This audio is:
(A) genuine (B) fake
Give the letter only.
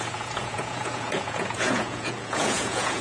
B